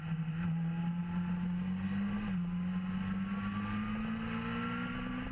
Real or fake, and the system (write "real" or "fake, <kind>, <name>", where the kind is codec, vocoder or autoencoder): real